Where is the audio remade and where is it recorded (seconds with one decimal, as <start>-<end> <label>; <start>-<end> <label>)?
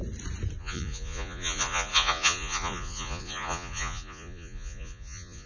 0.0-0.6 recorded; 0.6-5.5 remade